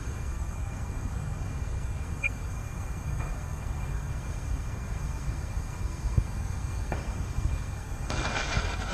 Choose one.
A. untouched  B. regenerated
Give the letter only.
B